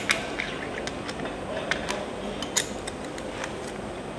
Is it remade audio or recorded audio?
recorded